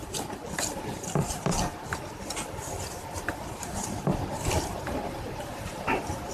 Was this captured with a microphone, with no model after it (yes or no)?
no